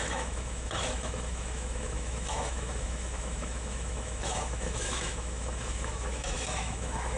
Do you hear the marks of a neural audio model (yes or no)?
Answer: yes